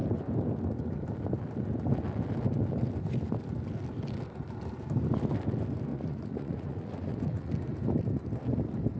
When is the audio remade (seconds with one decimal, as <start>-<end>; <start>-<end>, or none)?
5.9-7.5